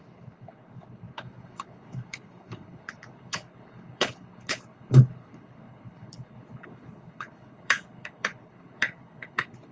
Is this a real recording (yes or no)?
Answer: no